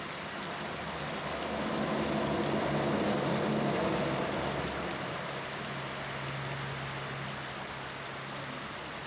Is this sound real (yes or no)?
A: yes